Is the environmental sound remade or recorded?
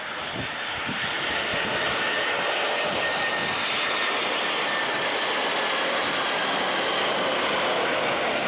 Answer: recorded